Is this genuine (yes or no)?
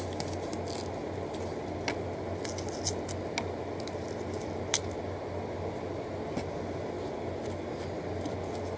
yes